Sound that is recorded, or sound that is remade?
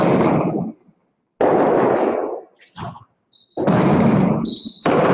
recorded